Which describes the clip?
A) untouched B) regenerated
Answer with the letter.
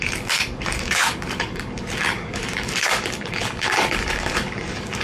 B